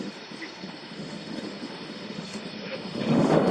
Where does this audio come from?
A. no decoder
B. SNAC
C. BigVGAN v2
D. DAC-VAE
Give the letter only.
D